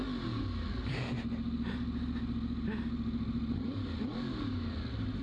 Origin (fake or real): real